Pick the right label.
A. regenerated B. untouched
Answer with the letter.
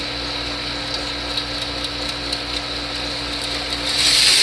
B